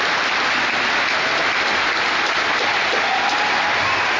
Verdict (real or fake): real